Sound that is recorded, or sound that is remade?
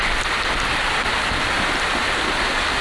recorded